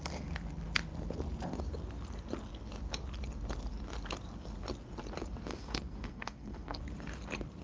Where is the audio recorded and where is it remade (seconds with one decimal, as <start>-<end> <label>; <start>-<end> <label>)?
0.0-5.5 recorded; 5.5-6.8 remade; 6.8-7.6 recorded